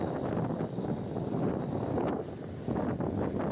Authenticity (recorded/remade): recorded